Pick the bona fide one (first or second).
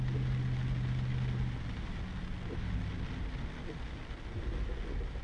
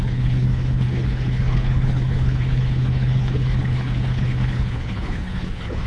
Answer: first